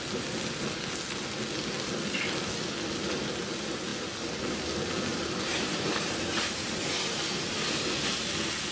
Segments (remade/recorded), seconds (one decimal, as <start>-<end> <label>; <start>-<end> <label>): 0.0-5.1 recorded; 5.1-7.2 remade; 7.2-8.7 recorded